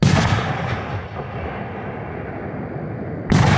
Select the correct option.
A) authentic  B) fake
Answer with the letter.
A